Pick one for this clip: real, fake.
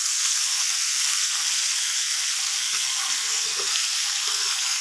fake